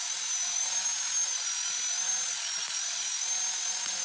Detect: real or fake real